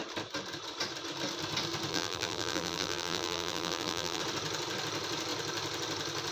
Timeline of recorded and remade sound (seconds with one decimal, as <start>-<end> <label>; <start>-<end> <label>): 0.0-1.9 recorded; 1.9-4.2 remade; 4.2-6.3 recorded